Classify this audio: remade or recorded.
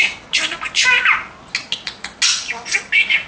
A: recorded